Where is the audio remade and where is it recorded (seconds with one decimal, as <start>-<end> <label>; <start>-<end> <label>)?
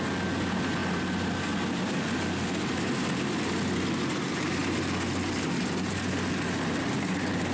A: 0.0-7.5 recorded